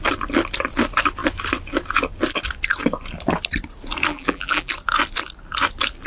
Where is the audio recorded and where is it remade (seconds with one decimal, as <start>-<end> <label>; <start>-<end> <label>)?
0.0-4.1 recorded; 4.1-4.7 remade; 4.7-6.1 recorded